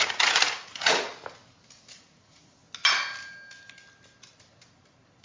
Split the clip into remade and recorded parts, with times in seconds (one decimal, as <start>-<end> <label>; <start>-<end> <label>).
0.0-1.1 remade; 1.1-2.0 recorded; 2.0-2.6 remade; 2.6-5.2 recorded

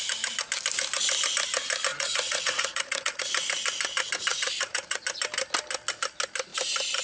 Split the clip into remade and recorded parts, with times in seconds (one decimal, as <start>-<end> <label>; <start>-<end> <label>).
0.0-1.9 recorded; 1.9-3.2 remade; 3.2-4.3 recorded; 4.3-5.0 remade; 5.0-7.0 recorded

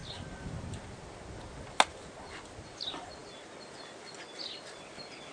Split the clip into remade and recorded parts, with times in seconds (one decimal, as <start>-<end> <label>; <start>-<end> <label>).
0.0-5.3 recorded

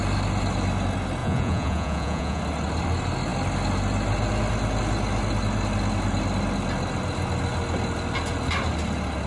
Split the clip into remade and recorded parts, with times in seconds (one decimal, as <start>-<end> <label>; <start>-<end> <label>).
0.0-1.2 recorded; 1.2-2.4 remade; 2.4-9.3 recorded

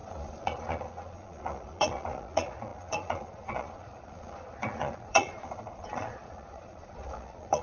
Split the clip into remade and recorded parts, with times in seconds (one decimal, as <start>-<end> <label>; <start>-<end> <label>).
0.0-7.6 remade

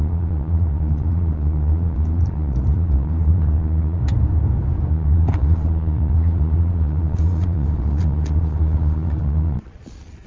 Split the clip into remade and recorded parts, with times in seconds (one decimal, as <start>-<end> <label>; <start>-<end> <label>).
0.0-4.0 remade; 4.0-4.9 recorded; 4.9-10.3 remade